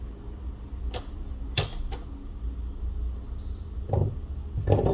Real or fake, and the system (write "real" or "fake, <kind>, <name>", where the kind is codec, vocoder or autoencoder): real